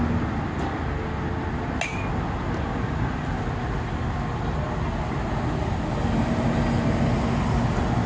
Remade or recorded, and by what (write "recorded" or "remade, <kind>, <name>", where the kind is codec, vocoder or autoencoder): recorded